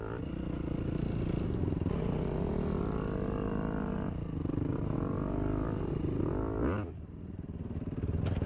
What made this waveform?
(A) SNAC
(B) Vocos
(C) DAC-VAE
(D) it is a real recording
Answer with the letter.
D